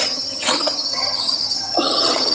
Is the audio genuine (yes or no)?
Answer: no